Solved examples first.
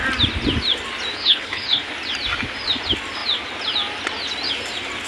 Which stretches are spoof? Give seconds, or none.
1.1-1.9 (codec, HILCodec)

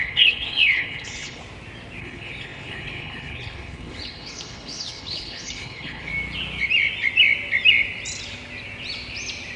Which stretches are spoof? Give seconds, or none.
0.0-1.4 (codec, HILCodec); 2.0-6.1

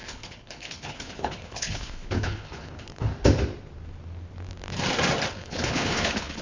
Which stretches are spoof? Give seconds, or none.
0.0-3.1 (codec, HILCodec); 5.3-6.4

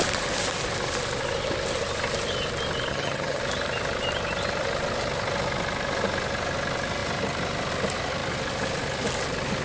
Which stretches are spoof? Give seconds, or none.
2.9-3.4 (vocoder, HiFi-GAN)

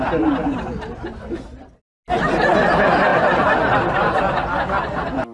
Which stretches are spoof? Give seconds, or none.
none

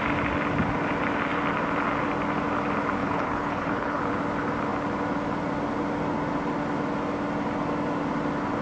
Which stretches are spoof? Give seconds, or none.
3.0-4.0 (codec, HILCodec)